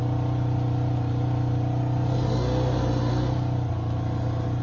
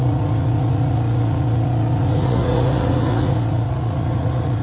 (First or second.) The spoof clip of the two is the second